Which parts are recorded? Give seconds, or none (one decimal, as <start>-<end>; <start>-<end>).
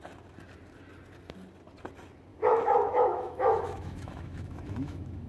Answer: 0.0-2.3